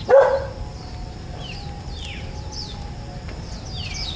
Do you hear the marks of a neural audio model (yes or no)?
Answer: no